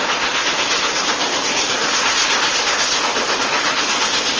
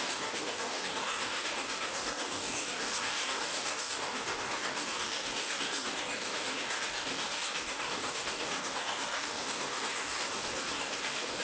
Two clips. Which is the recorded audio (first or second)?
first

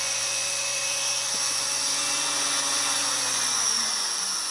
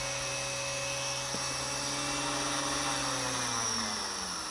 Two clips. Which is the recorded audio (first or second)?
second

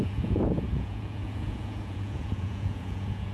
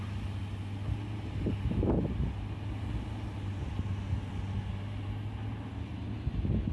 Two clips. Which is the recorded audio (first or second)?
second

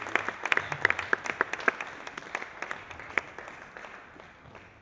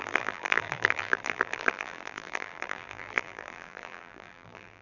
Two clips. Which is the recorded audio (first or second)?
first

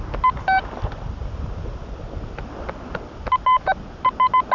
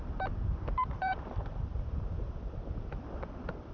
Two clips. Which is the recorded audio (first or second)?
first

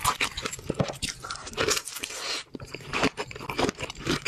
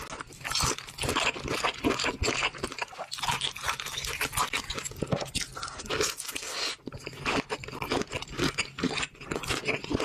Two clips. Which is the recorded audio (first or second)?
second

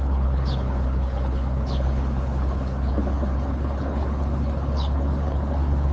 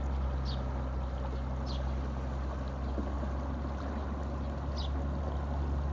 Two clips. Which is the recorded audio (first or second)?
second